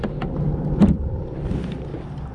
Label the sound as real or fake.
real